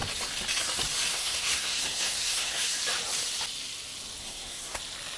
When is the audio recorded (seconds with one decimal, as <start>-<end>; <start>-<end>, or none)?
0.0-1.1; 2.8-4.2; 4.8-5.2